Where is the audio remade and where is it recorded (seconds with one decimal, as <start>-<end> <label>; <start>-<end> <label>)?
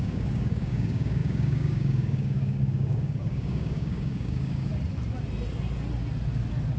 0.0-4.7 remade; 4.7-6.8 recorded